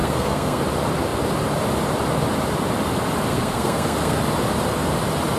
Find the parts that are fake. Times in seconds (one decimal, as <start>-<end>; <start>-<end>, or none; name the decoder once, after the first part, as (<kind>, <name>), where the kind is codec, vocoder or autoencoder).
0.0-0.6 (codec, SNAC); 3.3-4.2